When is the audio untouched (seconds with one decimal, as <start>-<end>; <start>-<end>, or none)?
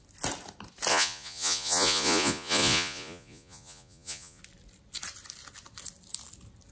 0.0-0.9; 4.4-6.7